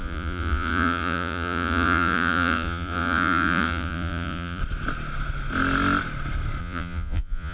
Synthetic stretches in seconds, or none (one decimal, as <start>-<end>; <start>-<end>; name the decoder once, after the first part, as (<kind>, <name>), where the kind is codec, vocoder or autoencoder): 0.0-4.6 (vocoder, Vocos); 6.6-7.5